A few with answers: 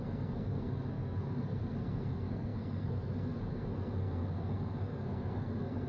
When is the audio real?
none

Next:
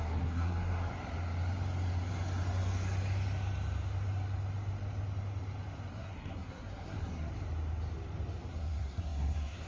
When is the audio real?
0.9-5.9; 7.3-8.5

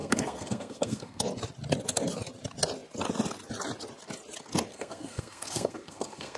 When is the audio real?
1.2-4.7

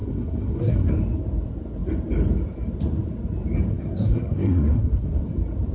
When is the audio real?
0.9-3.7; 5.2-5.7

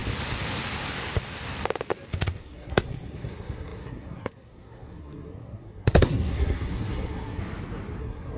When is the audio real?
0.0-2.4; 7.4-8.0